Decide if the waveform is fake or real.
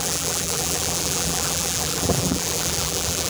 fake